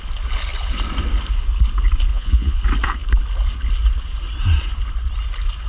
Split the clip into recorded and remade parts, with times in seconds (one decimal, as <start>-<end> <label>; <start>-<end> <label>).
0.0-2.1 recorded; 2.1-2.6 remade; 2.6-5.7 recorded